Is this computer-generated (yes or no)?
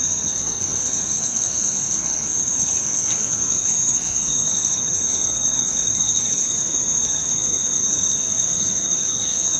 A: yes